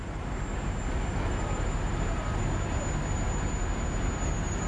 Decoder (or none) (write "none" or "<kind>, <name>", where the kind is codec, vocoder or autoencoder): none